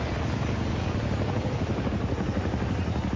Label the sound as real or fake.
real